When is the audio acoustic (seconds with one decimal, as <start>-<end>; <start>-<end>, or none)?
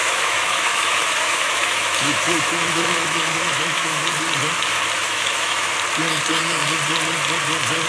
4.1-5.0; 5.7-7.9